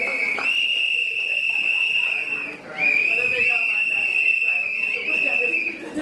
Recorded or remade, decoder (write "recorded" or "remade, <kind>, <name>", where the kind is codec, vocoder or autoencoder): recorded